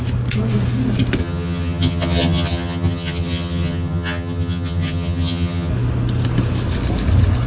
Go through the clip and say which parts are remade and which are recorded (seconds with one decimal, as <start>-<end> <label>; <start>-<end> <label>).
0.0-1.2 recorded; 1.2-5.7 remade; 5.7-7.5 recorded